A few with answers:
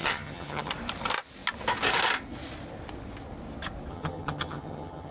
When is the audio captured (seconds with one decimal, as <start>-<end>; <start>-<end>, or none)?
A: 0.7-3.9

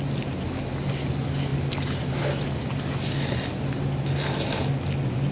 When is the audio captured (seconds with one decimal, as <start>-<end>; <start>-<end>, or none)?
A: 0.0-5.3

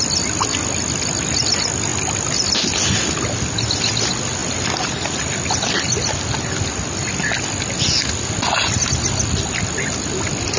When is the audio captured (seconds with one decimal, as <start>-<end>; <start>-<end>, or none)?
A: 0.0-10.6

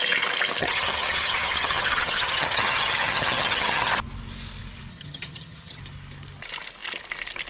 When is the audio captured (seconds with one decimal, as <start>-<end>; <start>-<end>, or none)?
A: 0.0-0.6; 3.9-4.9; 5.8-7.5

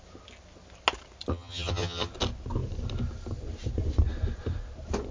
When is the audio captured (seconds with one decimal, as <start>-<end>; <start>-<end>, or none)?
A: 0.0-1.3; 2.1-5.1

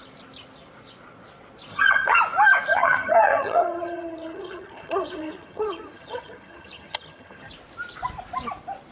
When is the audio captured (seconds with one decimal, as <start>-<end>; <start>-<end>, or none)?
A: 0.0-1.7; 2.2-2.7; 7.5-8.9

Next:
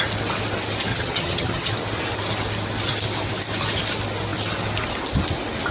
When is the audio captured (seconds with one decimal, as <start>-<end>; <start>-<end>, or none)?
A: 0.0-0.9; 1.7-5.7

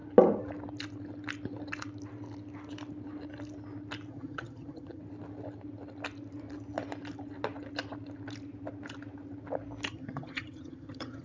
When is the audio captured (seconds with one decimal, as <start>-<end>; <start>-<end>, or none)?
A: 0.0-4.1; 5.0-9.9